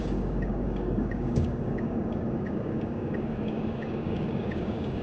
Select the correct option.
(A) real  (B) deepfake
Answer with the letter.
B